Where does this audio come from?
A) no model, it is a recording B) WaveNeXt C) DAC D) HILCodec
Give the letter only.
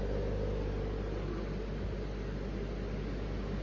A